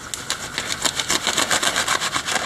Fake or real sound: real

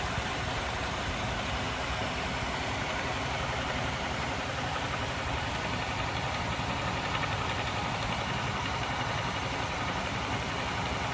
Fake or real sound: real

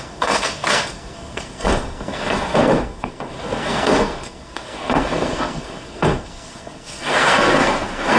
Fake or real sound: fake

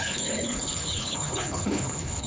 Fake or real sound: fake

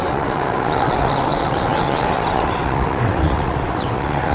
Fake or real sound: fake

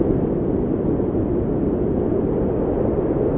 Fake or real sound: real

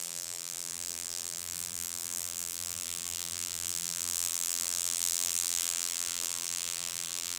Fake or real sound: fake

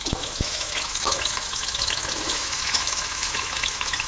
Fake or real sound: fake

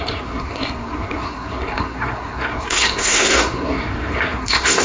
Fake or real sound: fake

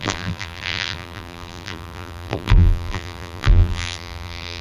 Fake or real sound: fake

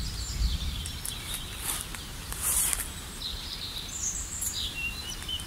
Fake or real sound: fake